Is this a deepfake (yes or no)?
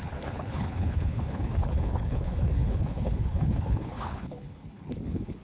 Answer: yes